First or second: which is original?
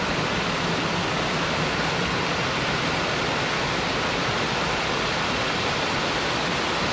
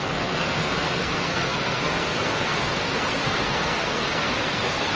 first